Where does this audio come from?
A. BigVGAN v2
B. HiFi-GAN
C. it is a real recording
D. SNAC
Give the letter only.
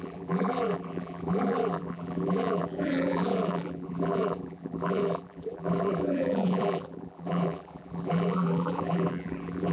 A